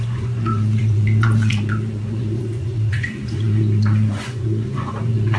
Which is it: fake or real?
fake